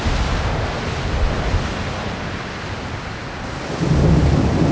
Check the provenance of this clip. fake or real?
real